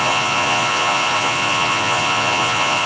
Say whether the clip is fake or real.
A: fake